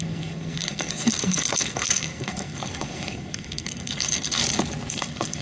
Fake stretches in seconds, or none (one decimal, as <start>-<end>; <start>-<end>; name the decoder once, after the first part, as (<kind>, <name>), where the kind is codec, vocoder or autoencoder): 0.0-4.4 (codec, SNAC); 4.9-5.4